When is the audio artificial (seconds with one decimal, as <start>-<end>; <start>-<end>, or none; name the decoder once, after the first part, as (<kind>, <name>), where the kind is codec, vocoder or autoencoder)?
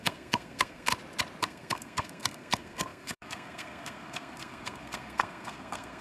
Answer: 0.0-0.9 (codec, SNAC); 1.4-6.0